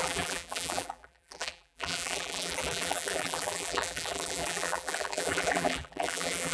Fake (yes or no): yes